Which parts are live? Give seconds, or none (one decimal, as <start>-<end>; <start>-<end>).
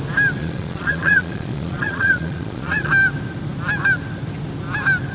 0.0-0.4; 2.9-5.1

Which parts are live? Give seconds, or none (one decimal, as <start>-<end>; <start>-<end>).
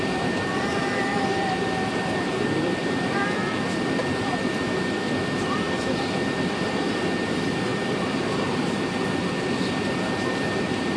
4.0-7.2; 7.7-8.4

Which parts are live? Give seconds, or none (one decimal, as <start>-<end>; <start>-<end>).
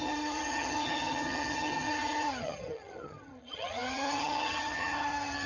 none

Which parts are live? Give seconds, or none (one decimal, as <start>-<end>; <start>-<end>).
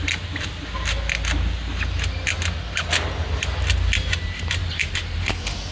0.0-5.7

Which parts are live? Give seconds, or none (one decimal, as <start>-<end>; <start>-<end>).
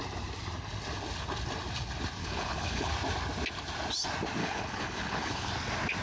0.0-2.2; 2.9-4.4; 5.5-6.0